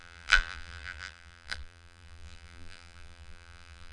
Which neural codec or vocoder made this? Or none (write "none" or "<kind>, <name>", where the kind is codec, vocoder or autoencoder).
vocoder, BigVGAN v2